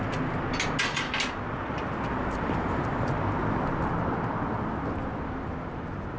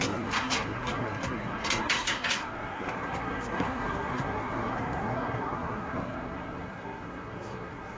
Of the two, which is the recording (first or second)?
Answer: first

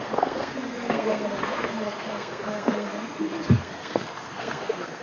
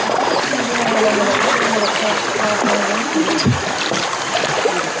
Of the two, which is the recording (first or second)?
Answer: second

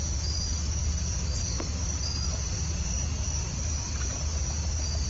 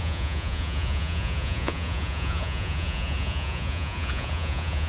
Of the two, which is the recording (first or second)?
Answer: first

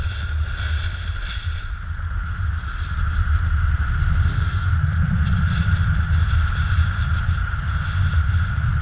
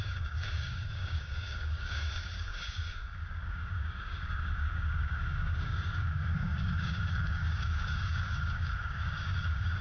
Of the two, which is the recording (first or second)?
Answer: first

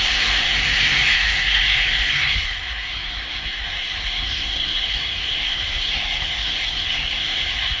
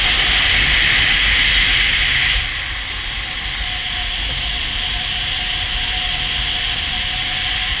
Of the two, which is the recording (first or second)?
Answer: second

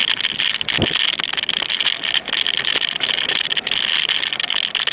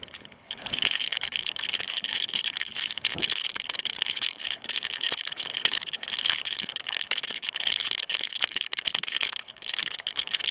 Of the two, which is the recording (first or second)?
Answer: first